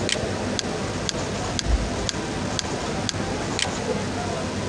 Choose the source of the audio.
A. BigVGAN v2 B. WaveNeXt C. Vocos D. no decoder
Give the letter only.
D